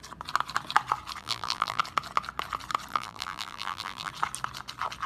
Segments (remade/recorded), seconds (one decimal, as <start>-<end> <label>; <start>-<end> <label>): 0.0-1.2 recorded; 1.2-1.8 remade; 1.8-2.9 recorded; 2.9-4.1 remade; 4.1-5.1 recorded